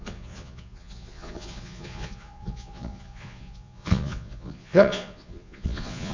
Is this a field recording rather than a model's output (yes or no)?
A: no